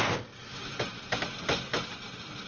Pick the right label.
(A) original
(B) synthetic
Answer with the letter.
A